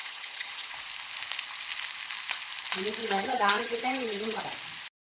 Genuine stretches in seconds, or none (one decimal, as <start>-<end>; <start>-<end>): 0.7-3.0; 4.4-5.1